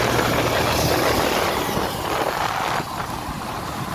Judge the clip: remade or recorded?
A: recorded